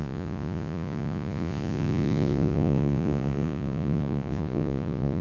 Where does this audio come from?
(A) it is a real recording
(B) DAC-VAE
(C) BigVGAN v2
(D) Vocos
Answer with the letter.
D